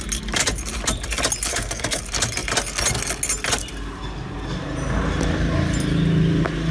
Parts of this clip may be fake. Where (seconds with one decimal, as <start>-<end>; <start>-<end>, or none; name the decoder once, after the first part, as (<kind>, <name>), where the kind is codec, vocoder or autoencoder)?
1.5-2.0 (codec, SNAC)